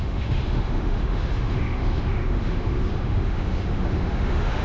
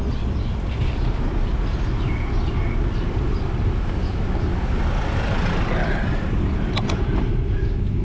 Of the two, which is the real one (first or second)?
second